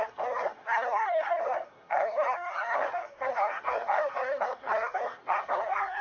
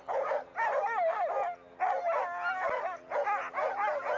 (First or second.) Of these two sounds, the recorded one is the second